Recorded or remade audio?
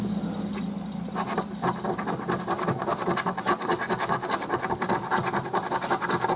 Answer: recorded